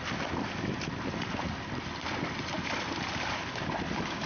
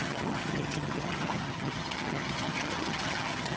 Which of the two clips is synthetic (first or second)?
second